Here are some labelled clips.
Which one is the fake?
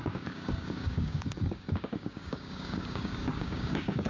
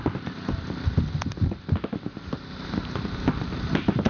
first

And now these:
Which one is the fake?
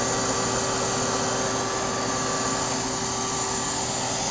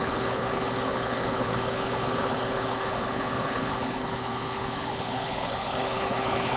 second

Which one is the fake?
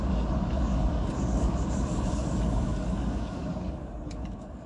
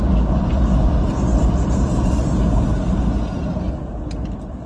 first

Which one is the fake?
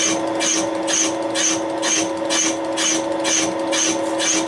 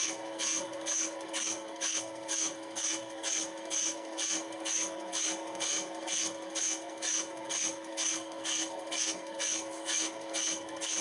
second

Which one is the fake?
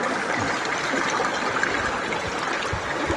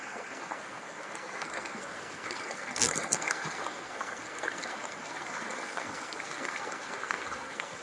second